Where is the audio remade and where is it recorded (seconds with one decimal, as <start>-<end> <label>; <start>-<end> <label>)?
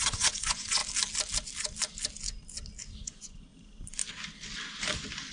0.0-0.8 remade; 0.8-3.0 recorded; 3.0-3.5 remade; 3.5-5.3 recorded